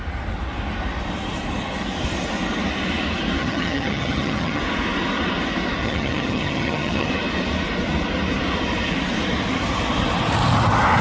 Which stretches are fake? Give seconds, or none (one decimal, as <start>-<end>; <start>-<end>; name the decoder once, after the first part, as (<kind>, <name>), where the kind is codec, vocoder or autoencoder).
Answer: 3.4-4.6 (vocoder, HiFi-GAN); 5.8-7.1